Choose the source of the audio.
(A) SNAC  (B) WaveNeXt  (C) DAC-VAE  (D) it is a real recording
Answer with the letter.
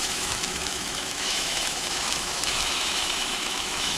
C